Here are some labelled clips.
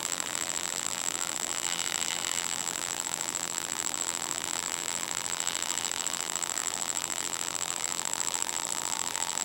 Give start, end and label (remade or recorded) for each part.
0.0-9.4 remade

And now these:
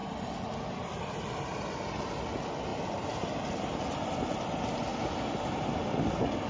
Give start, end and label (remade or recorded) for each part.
0.0-1.1 remade; 1.1-2.7 recorded; 2.7-4.2 remade; 4.2-4.9 recorded; 4.9-5.9 remade; 5.9-6.5 recorded

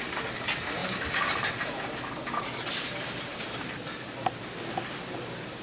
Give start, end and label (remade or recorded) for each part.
0.0-0.8 recorded; 0.8-1.5 remade; 1.5-2.8 recorded; 2.8-4.4 remade; 4.4-5.6 recorded

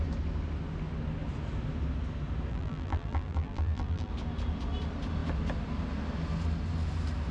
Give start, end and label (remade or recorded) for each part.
0.0-2.5 recorded; 2.5-4.1 remade; 4.1-7.3 recorded

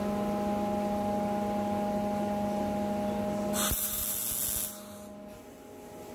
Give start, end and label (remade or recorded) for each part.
0.0-6.1 recorded